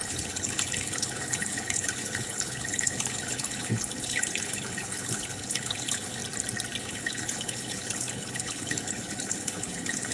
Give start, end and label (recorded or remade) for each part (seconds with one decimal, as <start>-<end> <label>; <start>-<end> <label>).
0.0-6.2 remade; 6.2-6.8 recorded; 6.8-10.1 remade